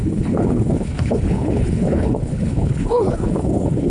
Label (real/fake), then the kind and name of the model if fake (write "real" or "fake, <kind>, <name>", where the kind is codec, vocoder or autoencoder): fake, codec, HILCodec